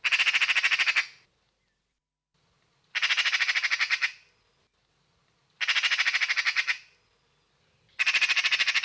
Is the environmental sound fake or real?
real